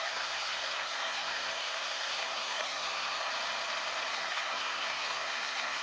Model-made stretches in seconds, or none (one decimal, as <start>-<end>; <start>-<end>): 0.0-3.3; 4.1-5.8